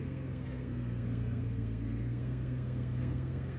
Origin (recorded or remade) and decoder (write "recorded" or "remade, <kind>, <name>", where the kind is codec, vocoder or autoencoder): remade, codec, SNAC